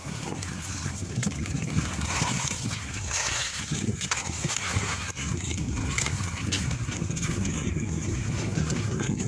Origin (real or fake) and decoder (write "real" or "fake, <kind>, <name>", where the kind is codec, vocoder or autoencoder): fake, codec, SNAC